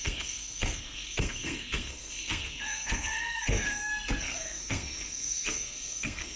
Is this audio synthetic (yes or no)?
yes